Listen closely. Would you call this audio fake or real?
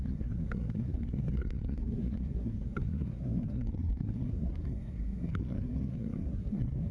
fake